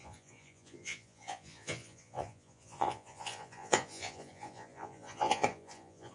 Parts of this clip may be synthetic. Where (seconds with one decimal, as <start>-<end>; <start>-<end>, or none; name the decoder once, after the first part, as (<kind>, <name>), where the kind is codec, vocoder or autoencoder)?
0.0-6.1 (vocoder, Vocos)